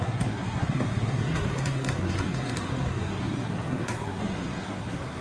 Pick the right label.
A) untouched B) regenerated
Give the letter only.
B